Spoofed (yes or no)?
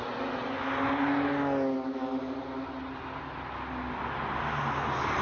no